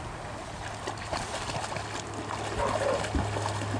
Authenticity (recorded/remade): recorded